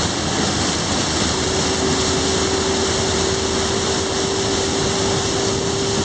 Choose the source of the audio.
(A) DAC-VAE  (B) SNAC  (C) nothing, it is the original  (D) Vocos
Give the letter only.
C